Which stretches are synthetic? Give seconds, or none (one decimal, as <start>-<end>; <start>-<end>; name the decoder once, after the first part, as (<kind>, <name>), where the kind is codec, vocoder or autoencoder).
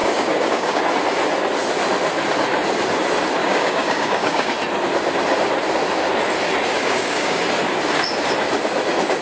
0.0-0.8 (codec, DAC); 3.4-4.5; 6.8-7.4